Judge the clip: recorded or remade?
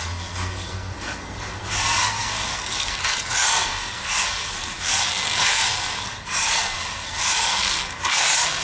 remade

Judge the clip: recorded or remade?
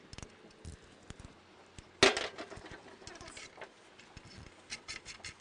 recorded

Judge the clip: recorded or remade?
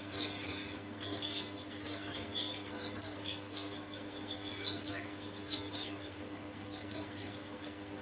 remade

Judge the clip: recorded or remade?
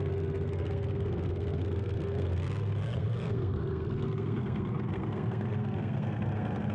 remade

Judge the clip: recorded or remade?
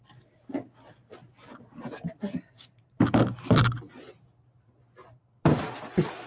recorded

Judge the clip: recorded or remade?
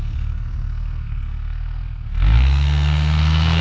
remade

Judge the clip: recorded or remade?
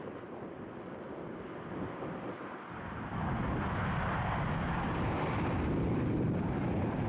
recorded